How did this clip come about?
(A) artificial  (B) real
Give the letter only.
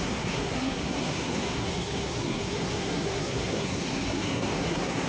A